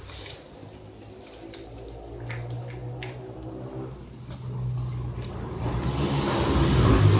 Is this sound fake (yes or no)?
no